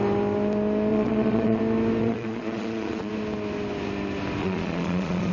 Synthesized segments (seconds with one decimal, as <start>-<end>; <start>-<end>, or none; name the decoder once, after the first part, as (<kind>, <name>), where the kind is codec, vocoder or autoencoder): 0.9-1.6 (vocoder, Vocos); 2.0-3.1; 4.4-5.3